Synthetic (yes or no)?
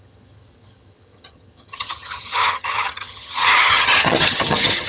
yes